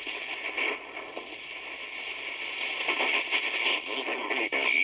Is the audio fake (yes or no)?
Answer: no